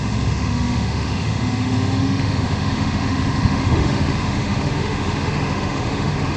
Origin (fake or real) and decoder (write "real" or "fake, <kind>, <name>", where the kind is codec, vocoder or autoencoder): fake, autoencoder, DAC-VAE